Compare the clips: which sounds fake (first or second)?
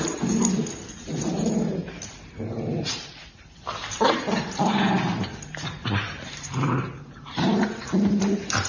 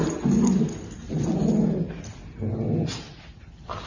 first